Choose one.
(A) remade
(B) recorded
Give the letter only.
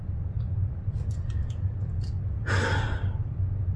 B